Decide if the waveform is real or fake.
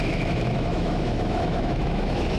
fake